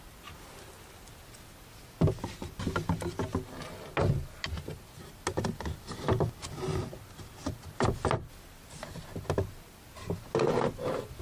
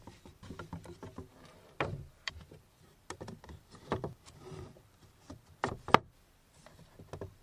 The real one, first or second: first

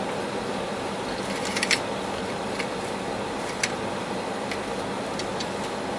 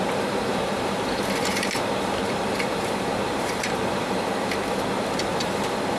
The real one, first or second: first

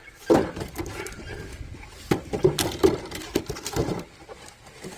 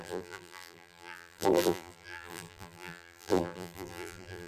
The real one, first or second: first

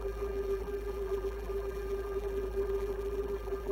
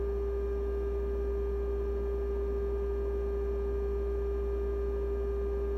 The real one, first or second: second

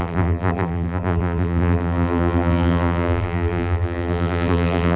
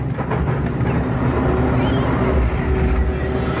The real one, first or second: second